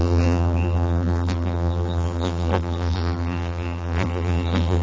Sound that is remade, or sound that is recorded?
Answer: remade